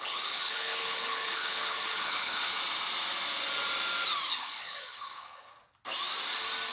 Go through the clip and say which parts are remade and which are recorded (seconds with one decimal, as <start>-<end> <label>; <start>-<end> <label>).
0.0-2.5 remade; 2.5-4.3 recorded; 4.3-5.5 remade; 5.5-6.7 recorded